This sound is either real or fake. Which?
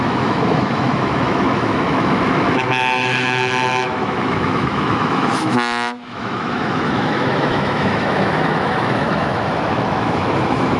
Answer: fake